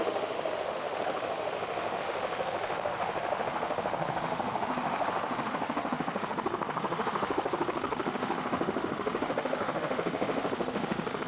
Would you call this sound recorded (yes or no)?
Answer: no